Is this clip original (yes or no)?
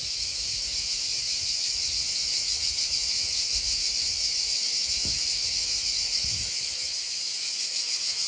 no